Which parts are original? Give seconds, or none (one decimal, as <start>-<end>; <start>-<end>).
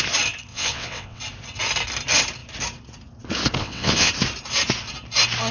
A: 0.0-0.5; 1.2-3.6; 4.1-5.5